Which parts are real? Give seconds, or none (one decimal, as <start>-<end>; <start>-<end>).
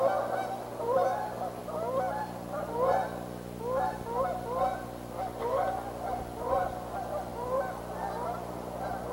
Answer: 0.0-7.3; 7.8-9.1